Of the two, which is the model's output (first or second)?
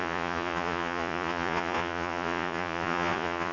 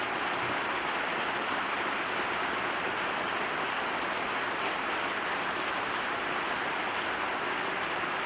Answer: first